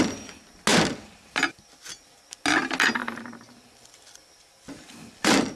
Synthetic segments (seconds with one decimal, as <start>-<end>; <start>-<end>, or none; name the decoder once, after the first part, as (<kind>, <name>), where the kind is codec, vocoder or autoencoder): 0.7-1.9 (vocoder, BigVGAN v2); 3.0-5.6